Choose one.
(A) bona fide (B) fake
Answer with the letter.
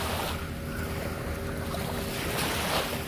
A